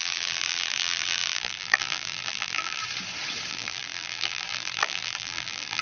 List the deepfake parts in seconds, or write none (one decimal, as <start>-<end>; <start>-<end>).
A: 0.0-2.8; 3.5-5.8

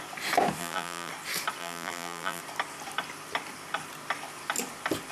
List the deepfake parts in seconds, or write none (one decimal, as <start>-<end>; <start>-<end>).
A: 0.6-1.1; 1.6-2.4

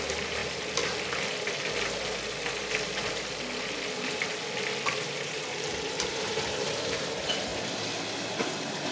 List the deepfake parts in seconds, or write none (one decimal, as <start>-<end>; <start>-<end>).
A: 0.0-0.4; 5.1-7.5; 8.4-8.9

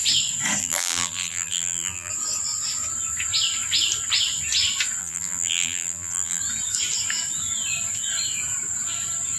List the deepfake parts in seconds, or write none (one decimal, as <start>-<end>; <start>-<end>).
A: 0.6-2.1; 5.0-6.4